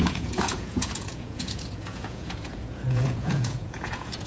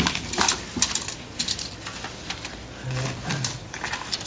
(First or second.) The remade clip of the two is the first